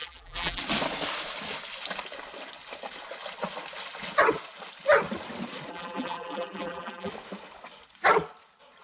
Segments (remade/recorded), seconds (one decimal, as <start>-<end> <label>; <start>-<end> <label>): 0.0-0.6 remade; 0.6-5.7 recorded; 5.7-7.1 remade; 7.1-8.8 recorded